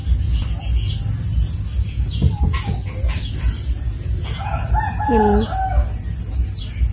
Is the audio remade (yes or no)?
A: no